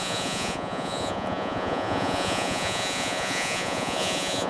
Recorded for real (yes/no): no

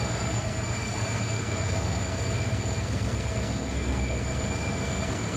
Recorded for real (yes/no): no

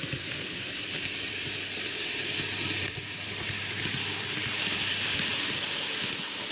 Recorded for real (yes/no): yes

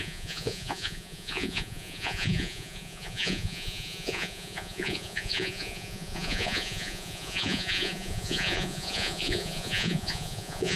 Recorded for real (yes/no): no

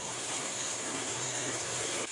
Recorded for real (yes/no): no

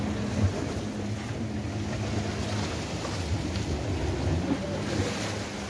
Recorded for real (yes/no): yes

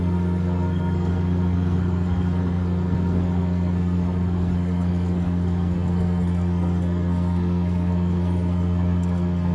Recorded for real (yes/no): no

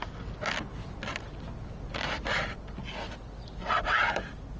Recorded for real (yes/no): yes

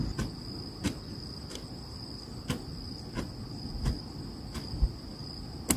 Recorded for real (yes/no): yes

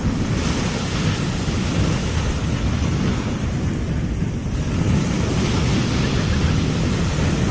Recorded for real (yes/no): yes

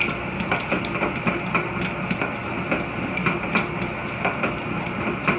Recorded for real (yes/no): yes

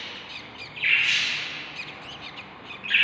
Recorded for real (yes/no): yes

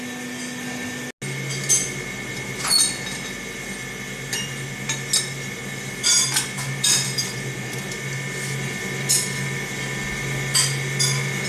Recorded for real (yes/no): yes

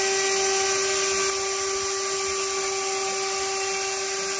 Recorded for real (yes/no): yes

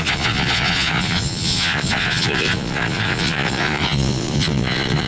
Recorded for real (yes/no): no